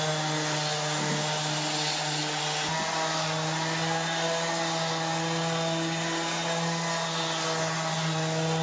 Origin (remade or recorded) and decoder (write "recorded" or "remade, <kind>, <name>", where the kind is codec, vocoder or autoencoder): recorded